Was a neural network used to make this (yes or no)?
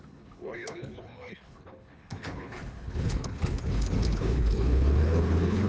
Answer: yes